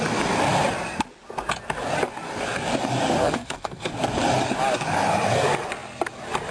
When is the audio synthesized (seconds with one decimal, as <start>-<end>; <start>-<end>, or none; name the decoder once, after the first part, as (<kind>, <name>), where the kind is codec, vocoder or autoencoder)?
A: 3.2-3.9 (codec, SNAC)